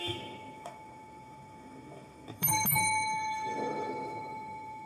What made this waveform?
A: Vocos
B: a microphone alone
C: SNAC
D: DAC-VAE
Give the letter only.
D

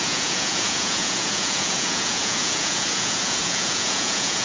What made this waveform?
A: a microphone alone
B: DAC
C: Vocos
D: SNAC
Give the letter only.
C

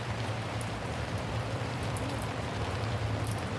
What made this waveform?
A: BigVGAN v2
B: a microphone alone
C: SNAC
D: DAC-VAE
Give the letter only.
A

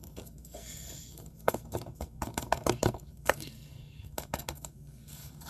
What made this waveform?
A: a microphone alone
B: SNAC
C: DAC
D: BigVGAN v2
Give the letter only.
B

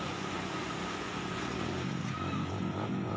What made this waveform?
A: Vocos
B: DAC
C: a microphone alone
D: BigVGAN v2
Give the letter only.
A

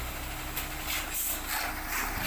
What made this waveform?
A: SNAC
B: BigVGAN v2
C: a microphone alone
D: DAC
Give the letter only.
C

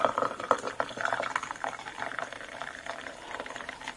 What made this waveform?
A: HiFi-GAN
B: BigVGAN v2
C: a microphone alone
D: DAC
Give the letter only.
C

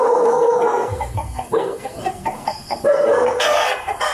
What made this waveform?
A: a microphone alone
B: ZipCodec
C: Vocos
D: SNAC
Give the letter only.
D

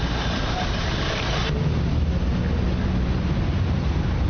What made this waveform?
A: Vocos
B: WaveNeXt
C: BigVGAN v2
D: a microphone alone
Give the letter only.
D